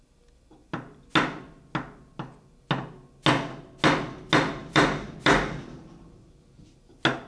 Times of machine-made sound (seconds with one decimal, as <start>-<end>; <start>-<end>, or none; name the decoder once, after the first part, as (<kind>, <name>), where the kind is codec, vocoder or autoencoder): 0.6-1.1 (vocoder, BigVGAN v2); 4.6-6.1